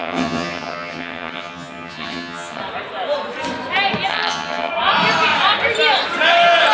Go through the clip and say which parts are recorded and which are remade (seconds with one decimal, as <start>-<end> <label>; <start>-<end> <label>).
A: 0.0-2.6 remade; 2.6-4.1 recorded; 4.1-4.7 remade; 4.7-6.7 recorded